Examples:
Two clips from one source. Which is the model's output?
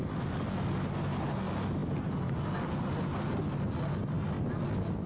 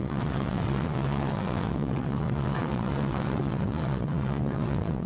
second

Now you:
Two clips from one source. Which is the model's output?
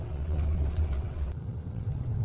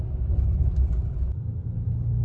first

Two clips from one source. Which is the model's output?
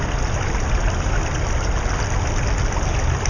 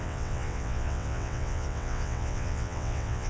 second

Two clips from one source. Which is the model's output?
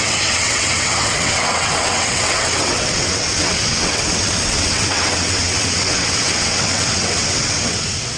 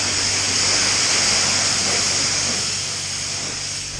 first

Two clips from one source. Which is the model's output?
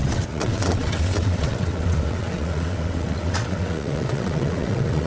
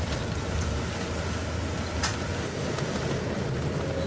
first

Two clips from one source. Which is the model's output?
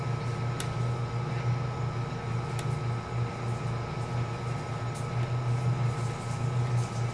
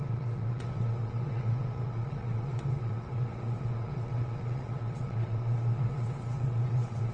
second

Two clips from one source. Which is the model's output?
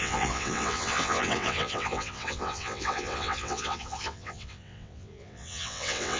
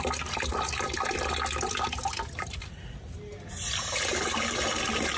first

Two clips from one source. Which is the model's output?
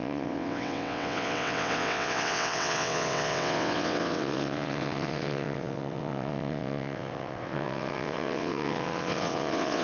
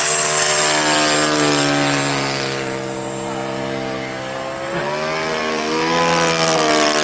first